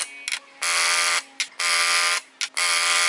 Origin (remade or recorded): recorded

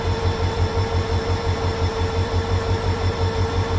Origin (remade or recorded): remade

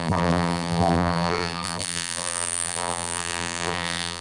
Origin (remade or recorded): remade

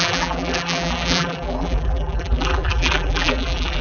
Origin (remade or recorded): remade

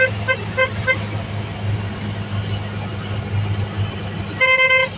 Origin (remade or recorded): recorded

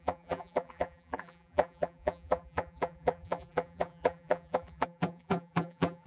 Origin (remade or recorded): remade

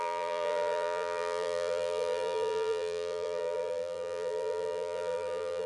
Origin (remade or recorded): remade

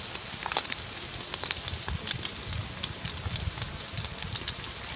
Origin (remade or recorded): recorded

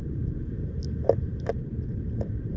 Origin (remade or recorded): remade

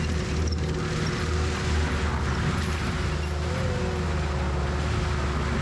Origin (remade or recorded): recorded